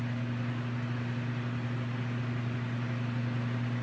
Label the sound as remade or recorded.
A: recorded